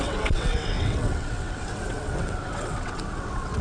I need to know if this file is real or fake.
fake